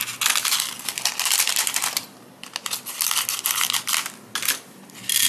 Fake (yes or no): no